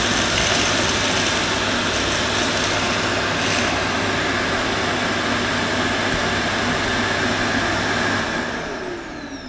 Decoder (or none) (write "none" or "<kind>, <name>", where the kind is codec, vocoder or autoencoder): none